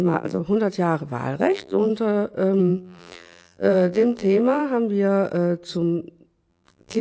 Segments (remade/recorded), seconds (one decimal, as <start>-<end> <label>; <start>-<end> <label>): 0.0-0.4 remade; 0.4-1.4 recorded; 1.4-1.9 remade; 1.9-2.6 recorded; 2.6-4.6 remade; 4.6-6.5 recorded; 6.5-7.0 remade